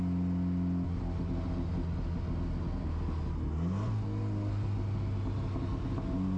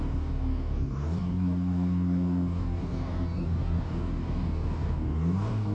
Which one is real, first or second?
first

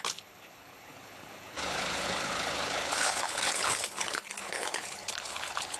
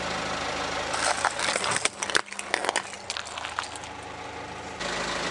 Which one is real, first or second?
second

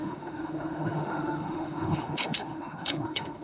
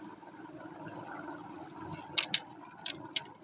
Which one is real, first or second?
second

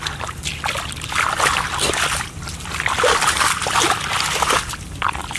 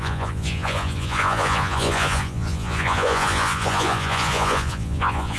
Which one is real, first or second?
first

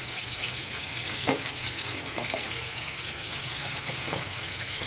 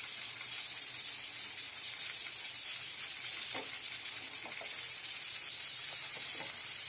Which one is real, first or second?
second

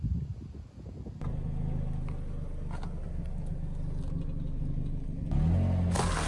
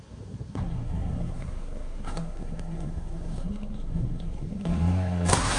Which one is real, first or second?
first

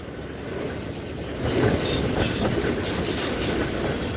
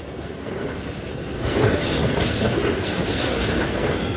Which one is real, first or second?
first